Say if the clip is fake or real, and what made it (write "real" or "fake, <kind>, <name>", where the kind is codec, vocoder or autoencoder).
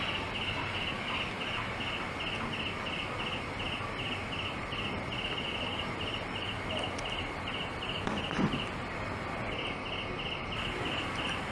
real